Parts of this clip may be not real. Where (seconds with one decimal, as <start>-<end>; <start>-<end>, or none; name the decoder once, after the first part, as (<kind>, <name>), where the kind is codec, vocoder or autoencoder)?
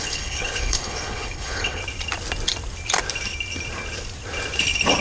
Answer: 0.0-1.8 (codec, HILCodec)